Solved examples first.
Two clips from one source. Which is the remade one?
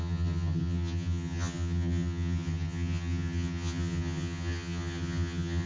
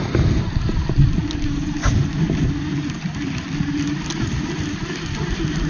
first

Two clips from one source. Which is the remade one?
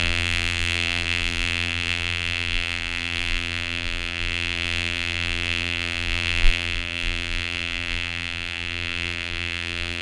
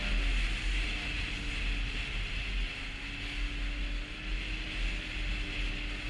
first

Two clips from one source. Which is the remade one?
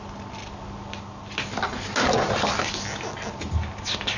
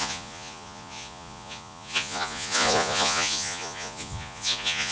second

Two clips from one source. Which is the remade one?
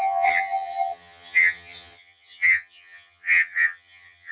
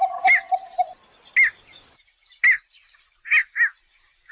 first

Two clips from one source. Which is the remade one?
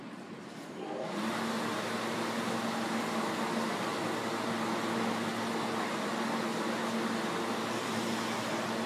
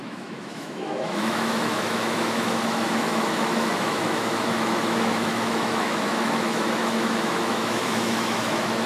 second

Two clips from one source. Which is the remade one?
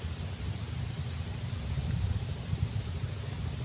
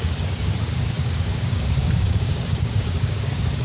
second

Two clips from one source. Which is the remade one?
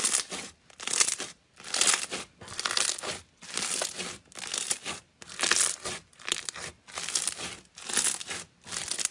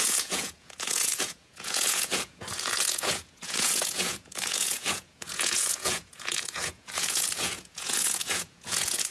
second